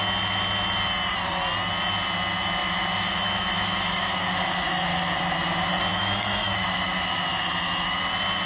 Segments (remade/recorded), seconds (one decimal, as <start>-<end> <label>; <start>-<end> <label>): 0.0-2.6 recorded; 2.6-5.2 remade; 5.2-5.9 recorded; 5.9-8.0 remade; 8.0-8.5 recorded